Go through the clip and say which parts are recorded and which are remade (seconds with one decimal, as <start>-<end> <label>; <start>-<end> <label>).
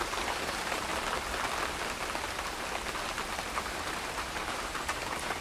0.0-0.9 remade; 0.9-3.5 recorded; 3.5-5.4 remade